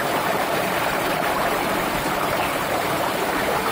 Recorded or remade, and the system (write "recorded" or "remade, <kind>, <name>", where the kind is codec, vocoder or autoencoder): remade, vocoder, BigVGAN v2